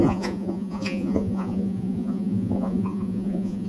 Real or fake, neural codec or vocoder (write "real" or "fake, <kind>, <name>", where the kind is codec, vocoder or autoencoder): fake, vocoder, Vocos